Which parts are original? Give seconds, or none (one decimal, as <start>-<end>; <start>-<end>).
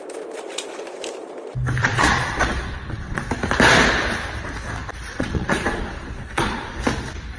0.0-1.8; 3.2-5.1; 6.8-7.4